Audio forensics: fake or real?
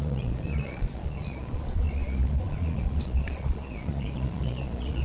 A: fake